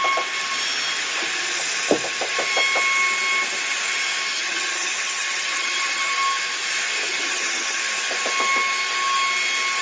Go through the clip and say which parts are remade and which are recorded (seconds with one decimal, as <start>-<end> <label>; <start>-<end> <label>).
0.0-4.3 recorded; 4.3-6.1 remade; 6.1-7.1 recorded; 7.1-7.8 remade; 7.8-9.8 recorded